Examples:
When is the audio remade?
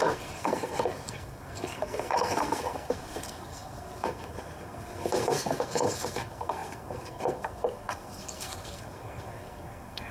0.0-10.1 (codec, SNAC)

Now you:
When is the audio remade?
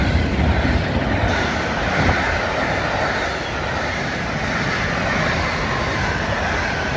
none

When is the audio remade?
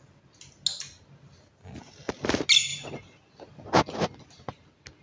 none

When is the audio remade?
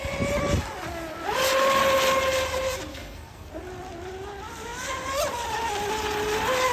2.9-3.5 (codec, SNAC)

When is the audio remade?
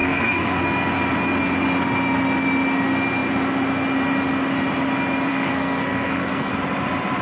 0.0-0.6 (codec, SNAC); 5.3-6.5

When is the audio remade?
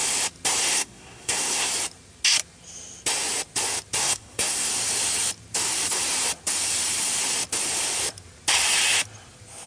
0.6-1.7 (codec, SNAC); 4.0-4.7